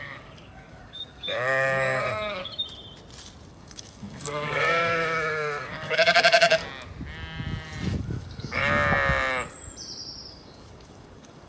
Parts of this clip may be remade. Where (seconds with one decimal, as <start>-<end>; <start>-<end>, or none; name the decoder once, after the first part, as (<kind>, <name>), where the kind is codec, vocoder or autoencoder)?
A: 0.0-2.4 (codec, DAC); 3.5-6.6; 8.0-8.6; 10.3-11.5